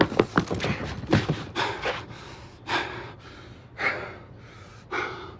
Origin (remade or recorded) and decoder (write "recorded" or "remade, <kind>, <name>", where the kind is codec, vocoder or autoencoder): recorded